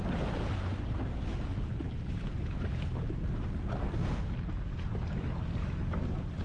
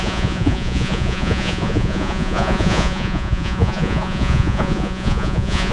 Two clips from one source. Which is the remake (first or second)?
second